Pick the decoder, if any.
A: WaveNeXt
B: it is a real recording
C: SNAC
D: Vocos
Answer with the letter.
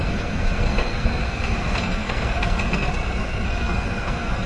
C